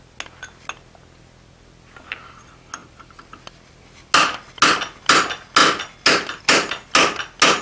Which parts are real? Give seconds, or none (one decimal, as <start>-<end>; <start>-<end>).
0.0-7.6